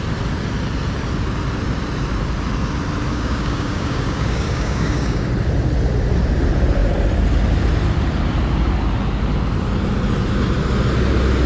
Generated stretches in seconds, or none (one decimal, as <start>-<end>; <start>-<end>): 3.1-5.3